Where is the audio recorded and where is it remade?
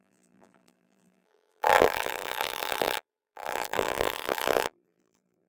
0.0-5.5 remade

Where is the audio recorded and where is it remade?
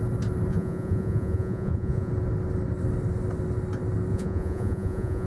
0.0-0.5 recorded; 0.5-2.1 remade; 2.1-4.1 recorded; 4.1-5.3 remade